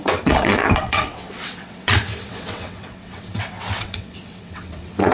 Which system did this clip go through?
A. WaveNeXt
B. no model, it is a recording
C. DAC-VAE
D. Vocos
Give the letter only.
A